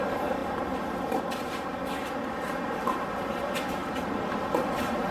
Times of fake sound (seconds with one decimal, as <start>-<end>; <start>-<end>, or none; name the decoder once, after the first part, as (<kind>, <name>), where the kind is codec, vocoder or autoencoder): 0.0-2.0 (vocoder, BigVGAN v2); 2.8-5.1